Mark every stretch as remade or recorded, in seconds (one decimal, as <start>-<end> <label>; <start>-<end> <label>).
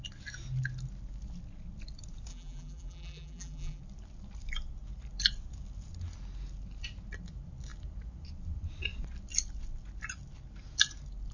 0.0-2.3 recorded; 2.3-3.8 remade; 3.8-11.3 recorded